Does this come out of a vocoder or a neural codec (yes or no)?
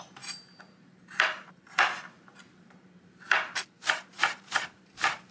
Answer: yes